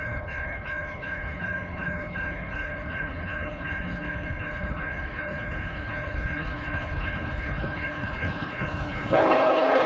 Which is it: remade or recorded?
remade